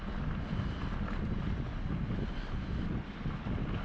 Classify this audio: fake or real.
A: real